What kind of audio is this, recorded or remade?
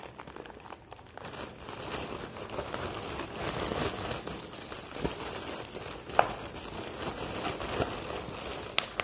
recorded